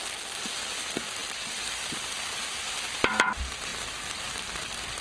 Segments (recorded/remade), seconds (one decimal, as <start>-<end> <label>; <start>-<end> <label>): 0.0-1.2 recorded; 1.2-3.1 remade; 3.1-5.0 recorded